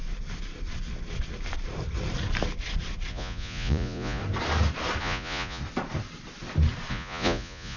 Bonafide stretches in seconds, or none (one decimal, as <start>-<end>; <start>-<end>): 0.0-3.1; 4.2-5.0; 5.6-6.9